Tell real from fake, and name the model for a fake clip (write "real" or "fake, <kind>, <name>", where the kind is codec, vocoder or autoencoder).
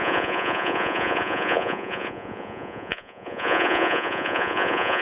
fake, vocoder, Vocos